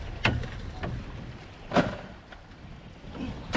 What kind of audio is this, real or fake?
real